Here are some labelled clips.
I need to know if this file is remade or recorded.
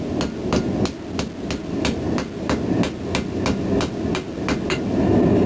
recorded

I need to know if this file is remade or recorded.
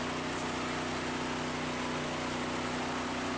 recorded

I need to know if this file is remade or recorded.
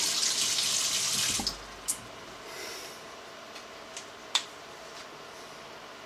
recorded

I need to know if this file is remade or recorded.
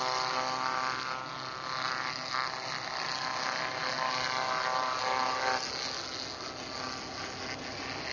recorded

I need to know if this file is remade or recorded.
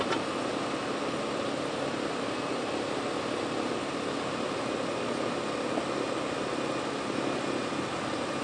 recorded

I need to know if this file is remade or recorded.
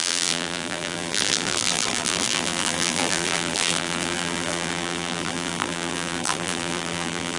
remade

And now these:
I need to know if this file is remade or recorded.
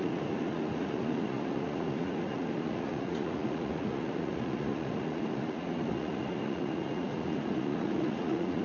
remade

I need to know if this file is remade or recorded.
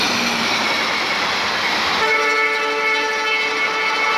recorded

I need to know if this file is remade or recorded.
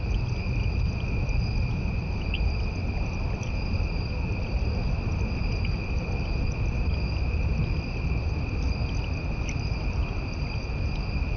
recorded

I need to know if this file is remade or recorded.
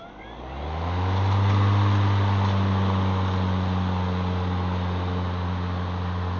recorded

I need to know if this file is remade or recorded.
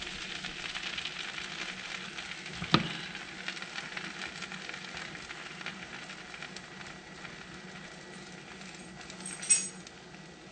recorded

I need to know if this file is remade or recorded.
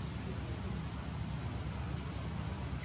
recorded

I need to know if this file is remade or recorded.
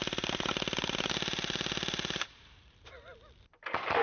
recorded